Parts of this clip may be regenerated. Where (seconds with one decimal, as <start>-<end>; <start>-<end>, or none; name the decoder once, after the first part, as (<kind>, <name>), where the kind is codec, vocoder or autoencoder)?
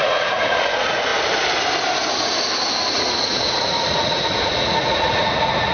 0.0-1.1 (vocoder, Vocos); 2.9-5.7